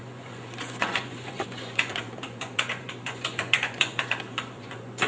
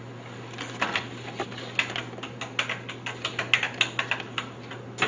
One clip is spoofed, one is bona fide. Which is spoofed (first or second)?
first